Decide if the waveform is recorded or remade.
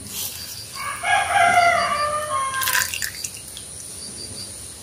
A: recorded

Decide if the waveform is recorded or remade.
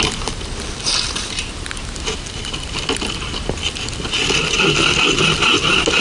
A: recorded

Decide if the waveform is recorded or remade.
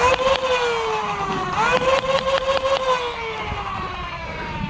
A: recorded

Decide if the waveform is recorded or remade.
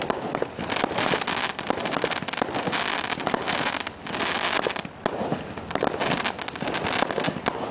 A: recorded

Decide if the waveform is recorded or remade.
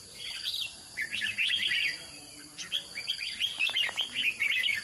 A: remade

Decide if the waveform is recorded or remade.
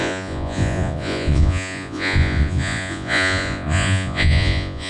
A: remade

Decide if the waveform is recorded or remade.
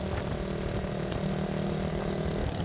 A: recorded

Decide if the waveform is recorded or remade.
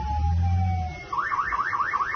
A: recorded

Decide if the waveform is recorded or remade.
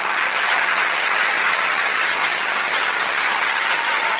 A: remade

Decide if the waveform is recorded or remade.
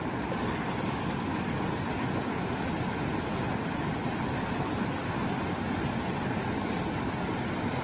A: recorded